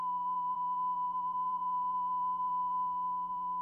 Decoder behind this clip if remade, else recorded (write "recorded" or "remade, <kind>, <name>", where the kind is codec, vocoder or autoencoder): remade, vocoder, BigVGAN v2